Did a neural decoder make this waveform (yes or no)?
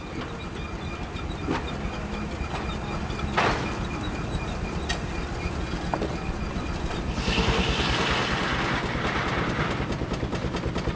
no